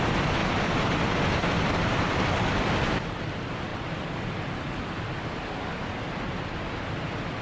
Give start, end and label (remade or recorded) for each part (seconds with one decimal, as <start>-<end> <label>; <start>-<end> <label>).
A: 0.0-0.4 recorded; 0.4-3.1 remade; 3.1-7.4 recorded